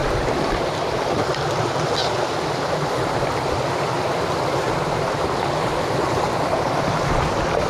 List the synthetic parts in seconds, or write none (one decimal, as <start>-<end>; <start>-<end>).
0.0-1.2